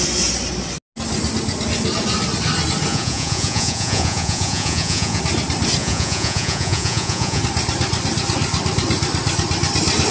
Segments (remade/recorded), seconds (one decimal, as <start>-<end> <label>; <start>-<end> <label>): 0.0-2.9 recorded; 2.9-5.2 remade; 5.2-5.8 recorded; 5.8-7.4 remade; 7.4-10.1 recorded